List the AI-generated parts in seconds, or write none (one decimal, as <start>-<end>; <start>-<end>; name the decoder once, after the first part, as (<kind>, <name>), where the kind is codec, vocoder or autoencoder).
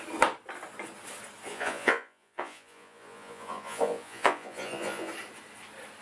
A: 1.5-5.1 (vocoder, Vocos)